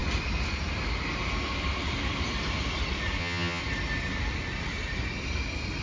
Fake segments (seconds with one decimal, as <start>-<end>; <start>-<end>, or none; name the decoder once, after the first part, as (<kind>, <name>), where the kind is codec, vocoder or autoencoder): 3.2-3.6 (vocoder, HiFi-GAN)